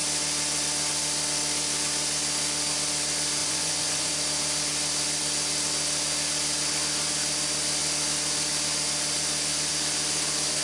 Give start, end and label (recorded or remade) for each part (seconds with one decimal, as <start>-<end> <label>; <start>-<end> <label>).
0.0-3.4 recorded; 3.4-4.1 remade; 4.1-10.6 recorded